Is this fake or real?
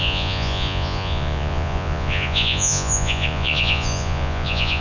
fake